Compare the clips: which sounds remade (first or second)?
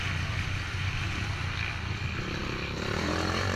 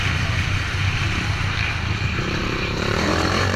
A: second